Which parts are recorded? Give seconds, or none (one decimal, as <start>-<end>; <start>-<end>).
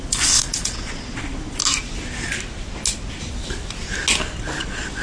1.6-4.6